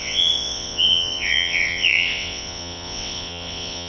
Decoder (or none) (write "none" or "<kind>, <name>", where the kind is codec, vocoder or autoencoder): vocoder, WaveNeXt